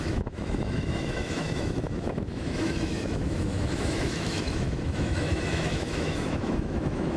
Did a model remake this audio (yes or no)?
yes